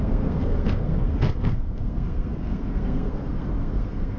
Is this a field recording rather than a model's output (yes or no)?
no